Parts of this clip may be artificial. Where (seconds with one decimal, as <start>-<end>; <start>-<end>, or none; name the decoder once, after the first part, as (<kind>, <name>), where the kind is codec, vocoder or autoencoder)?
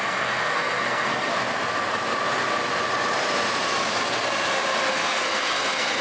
0.0-1.3 (codec, SNAC); 4.9-6.0